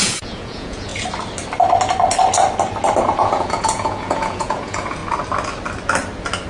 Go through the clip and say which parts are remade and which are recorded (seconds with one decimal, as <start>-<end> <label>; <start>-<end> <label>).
0.0-0.9 remade; 0.9-3.0 recorded; 3.0-5.0 remade; 5.0-6.5 recorded